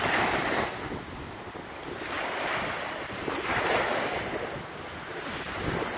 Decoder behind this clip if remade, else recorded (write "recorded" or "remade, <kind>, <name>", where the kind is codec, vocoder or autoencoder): recorded